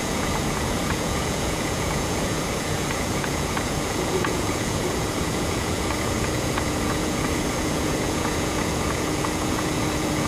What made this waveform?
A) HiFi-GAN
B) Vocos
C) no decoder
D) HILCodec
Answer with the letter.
B